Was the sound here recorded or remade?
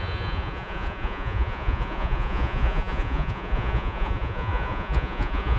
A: remade